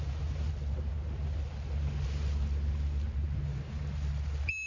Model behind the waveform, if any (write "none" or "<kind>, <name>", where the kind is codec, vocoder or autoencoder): none